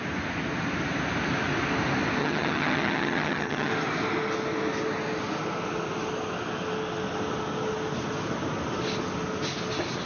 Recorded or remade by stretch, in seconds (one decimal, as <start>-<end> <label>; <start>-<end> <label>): 0.0-2.2 recorded; 2.2-3.7 remade; 3.7-10.1 recorded

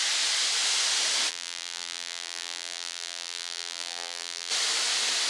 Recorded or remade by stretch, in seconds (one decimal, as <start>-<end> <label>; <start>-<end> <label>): 0.0-1.3 recorded; 1.3-4.5 remade; 4.5-5.3 recorded